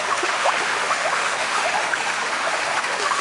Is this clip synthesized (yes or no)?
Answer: yes